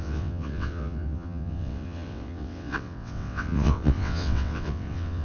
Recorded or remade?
remade